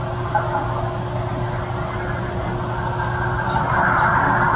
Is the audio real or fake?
real